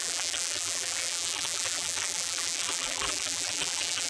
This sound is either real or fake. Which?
fake